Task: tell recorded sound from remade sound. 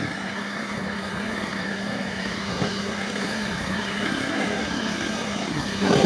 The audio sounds remade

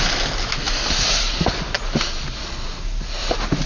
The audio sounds recorded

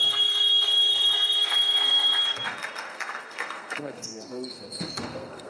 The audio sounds remade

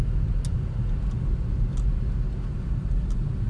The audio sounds recorded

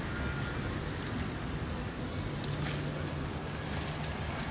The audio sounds recorded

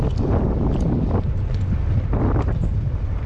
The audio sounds recorded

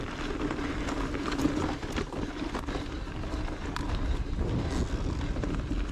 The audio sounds recorded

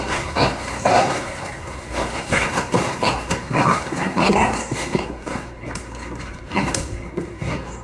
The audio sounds remade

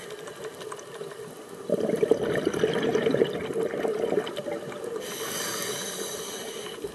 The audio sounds recorded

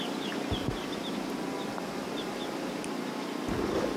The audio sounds recorded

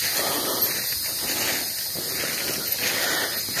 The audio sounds recorded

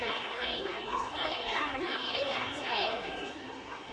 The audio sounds remade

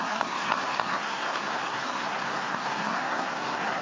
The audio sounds remade